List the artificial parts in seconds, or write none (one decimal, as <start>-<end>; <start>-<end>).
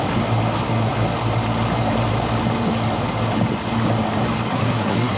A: 4.5-5.2